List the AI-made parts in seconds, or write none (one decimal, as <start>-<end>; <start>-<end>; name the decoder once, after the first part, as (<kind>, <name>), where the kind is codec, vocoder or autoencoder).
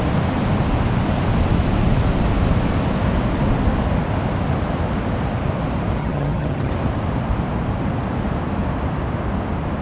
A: 6.0-6.7 (vocoder, HiFi-GAN)